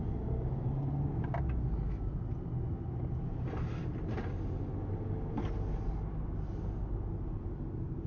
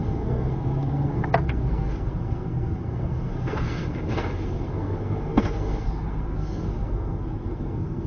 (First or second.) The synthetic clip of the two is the second